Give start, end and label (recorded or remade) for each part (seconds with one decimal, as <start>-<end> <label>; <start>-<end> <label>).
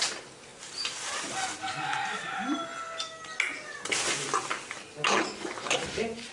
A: 0.0-2.7 remade; 2.7-5.6 recorded; 5.6-6.3 remade